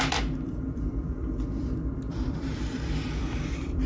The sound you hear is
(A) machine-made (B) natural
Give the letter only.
A